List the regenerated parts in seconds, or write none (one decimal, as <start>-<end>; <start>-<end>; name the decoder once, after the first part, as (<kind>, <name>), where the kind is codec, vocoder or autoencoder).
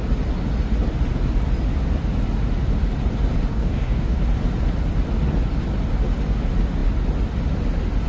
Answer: 3.5-4.2 (codec, DAC)